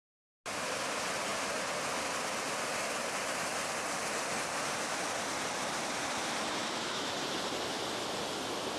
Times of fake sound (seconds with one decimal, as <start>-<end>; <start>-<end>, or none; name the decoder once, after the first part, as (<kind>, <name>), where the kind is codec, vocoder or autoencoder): 6.6-7.1 (autoencoder, DAC-VAE)